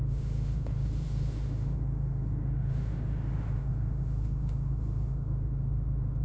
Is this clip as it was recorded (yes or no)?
no